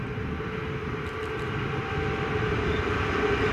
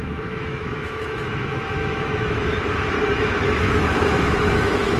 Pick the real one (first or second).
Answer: first